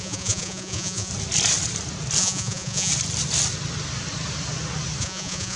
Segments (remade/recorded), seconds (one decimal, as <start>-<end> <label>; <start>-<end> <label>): 0.0-1.1 remade; 1.1-2.2 recorded; 2.2-2.9 remade; 2.9-5.0 recorded; 5.0-5.6 remade